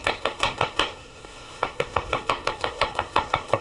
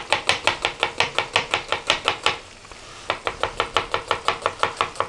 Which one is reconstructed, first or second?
first